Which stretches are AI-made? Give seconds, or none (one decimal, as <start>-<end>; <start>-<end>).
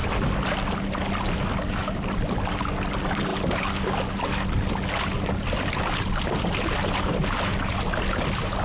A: none